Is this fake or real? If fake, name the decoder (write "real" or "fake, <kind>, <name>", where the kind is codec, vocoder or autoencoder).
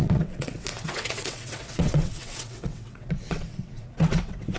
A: fake, vocoder, WaveNeXt